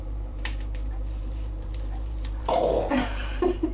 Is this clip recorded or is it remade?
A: remade